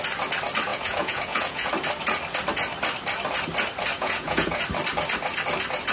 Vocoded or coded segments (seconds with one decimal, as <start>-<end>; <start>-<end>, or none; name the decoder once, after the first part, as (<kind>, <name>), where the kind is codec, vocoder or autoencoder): 0.7-1.7 (vocoder, Vocos); 3.9-4.6